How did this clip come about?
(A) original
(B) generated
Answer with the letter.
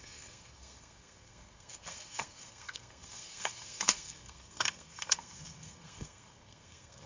B